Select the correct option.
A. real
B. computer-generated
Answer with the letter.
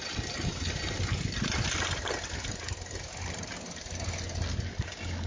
A